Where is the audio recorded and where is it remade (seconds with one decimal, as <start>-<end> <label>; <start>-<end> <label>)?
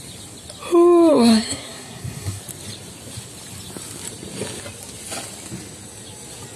0.0-1.1 recorded; 1.1-2.4 remade; 2.4-6.6 recorded